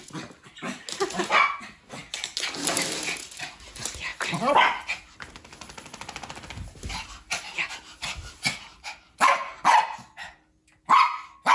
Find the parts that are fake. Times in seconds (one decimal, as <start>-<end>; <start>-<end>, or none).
none